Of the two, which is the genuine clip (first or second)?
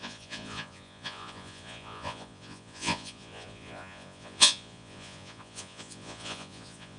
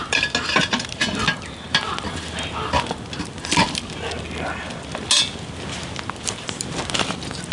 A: second